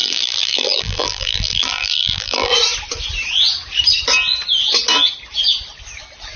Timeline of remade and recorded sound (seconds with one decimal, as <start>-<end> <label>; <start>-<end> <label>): 0.0-2.5 remade; 2.5-6.4 recorded